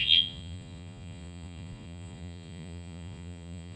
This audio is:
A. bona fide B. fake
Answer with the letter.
B